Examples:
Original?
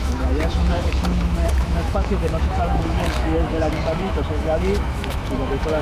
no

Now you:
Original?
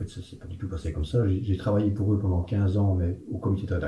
yes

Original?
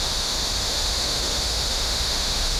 no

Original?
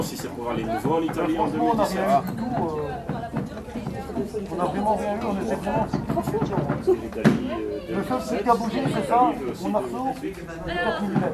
yes